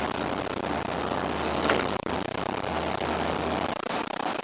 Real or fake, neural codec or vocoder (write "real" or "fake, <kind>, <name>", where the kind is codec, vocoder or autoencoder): real